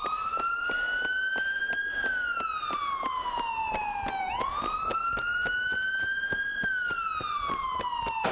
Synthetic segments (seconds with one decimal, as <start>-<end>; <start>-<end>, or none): none